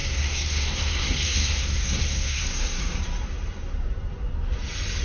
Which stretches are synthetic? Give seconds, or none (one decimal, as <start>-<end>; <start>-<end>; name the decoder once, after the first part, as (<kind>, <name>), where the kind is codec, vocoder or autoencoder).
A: 0.0-3.0 (codec, SNAC)

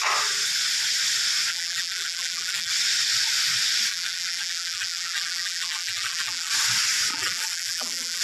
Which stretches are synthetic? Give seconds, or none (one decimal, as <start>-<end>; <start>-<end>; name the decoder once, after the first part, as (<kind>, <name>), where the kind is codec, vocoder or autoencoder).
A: 1.5-2.7 (vocoder, BigVGAN v2); 3.9-6.5; 7.1-8.2

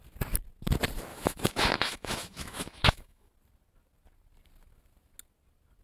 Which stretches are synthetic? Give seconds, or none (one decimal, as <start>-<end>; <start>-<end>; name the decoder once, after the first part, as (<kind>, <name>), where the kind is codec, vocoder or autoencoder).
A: 1.1-3.3 (autoencoder, DAC-VAE)